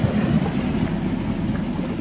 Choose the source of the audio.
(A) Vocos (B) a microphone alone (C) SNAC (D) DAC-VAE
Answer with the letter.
B